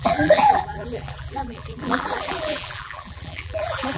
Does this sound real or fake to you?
fake